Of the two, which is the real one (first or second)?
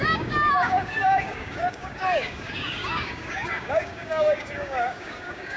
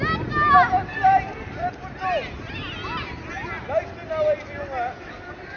second